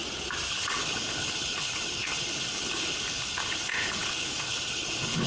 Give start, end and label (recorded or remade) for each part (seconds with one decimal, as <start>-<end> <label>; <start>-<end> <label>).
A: 0.0-0.5 recorded; 0.5-5.3 remade